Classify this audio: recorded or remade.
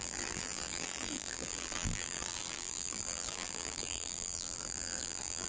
remade